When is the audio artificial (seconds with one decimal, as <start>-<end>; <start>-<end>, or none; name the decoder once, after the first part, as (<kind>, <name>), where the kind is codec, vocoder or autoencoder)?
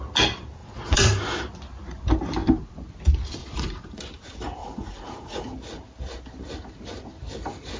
0.6-1.2 (vocoder, Vocos); 3.4-4.0; 4.6-5.4